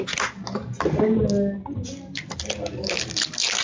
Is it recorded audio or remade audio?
recorded